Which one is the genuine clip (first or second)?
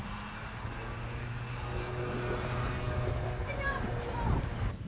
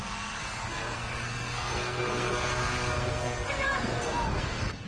first